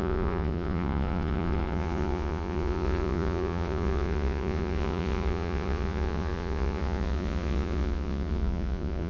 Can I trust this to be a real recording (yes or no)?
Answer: no